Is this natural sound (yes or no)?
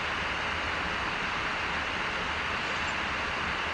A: yes